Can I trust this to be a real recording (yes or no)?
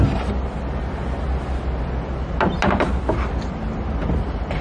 yes